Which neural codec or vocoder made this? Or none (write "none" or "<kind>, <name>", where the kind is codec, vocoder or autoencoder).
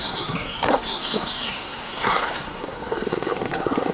codec, SNAC